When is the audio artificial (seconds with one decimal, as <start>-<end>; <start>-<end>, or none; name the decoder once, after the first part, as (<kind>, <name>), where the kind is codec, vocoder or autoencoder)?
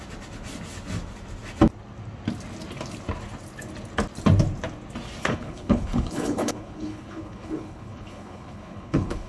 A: 5.2-9.3 (codec, HILCodec)